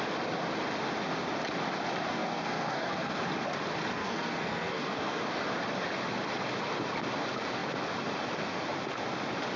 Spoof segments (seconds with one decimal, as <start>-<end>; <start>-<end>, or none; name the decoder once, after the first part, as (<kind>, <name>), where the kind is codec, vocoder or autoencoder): 2.1-3.2 (codec, SNAC); 3.9-5.2